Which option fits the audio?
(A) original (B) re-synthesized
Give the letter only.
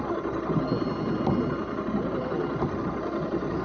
A